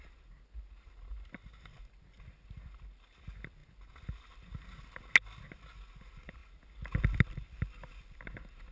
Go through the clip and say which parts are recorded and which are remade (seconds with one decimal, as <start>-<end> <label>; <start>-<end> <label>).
0.0-8.7 recorded